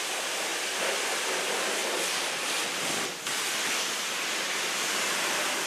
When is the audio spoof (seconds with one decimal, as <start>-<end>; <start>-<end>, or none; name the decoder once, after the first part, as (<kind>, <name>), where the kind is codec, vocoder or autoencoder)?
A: 0.5-1.4 (vocoder, BigVGAN v2); 1.8-5.2